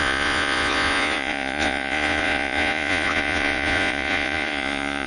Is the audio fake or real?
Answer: fake